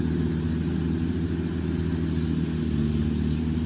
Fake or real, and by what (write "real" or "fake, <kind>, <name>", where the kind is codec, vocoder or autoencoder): real